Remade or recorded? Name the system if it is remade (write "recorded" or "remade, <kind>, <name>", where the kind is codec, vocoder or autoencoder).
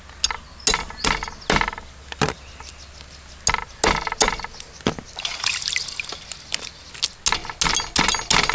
recorded